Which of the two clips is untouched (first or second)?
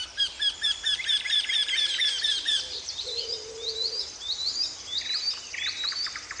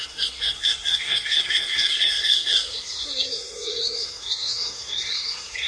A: first